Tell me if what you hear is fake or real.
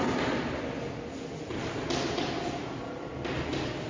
real